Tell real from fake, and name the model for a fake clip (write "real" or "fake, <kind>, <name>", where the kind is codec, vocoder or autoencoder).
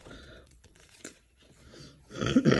fake, vocoder, Vocos